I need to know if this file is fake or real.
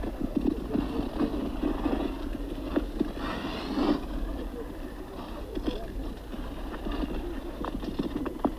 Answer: real